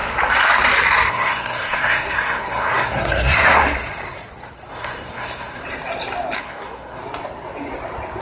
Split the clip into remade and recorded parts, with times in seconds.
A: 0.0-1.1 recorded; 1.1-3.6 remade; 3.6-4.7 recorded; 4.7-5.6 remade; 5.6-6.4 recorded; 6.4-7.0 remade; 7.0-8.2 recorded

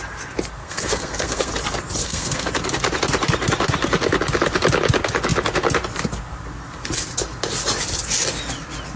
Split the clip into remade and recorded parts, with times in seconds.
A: 0.0-0.6 recorded; 0.6-1.5 remade; 1.5-2.0 recorded; 2.0-2.5 remade; 2.5-9.0 recorded

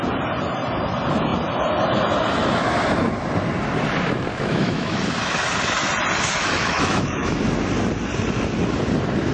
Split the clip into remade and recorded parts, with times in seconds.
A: 0.0-4.3 recorded; 4.3-5.0 remade; 5.0-6.4 recorded; 6.4-7.4 remade; 7.4-9.3 recorded

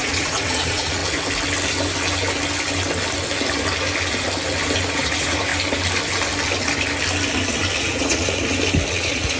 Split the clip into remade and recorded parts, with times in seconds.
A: 0.0-1.0 remade; 1.0-4.8 recorded; 4.8-5.5 remade; 5.5-7.8 recorded; 7.8-8.4 remade; 8.4-8.9 recorded; 8.9-9.4 remade

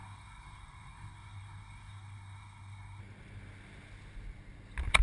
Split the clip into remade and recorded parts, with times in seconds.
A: 0.0-3.0 remade; 3.0-5.0 recorded

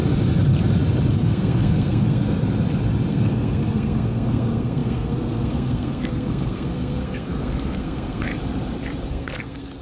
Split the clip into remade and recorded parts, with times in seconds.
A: 0.0-1.1 recorded; 1.1-2.2 remade; 2.2-3.1 recorded; 3.1-8.3 remade; 8.3-9.1 recorded; 9.1-9.8 remade